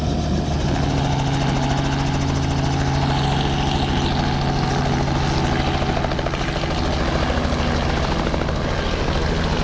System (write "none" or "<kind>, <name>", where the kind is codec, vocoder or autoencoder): none